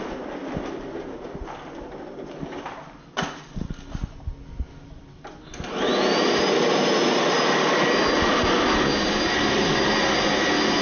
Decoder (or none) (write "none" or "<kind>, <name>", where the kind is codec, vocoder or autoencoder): none